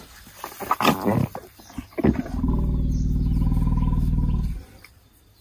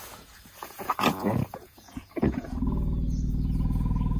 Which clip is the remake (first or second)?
second